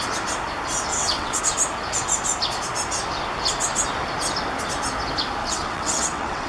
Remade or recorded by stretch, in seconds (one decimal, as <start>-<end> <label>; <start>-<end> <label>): 0.0-0.9 recorded; 0.9-1.4 remade; 1.4-5.4 recorded; 5.4-6.5 remade